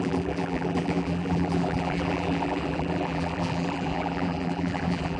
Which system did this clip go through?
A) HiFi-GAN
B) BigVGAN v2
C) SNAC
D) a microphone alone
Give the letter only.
B